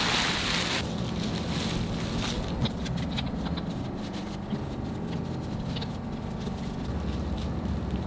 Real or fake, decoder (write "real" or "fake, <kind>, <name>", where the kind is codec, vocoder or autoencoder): real